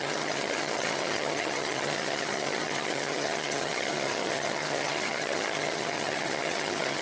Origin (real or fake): fake